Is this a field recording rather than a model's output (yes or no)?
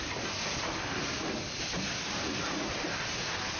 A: yes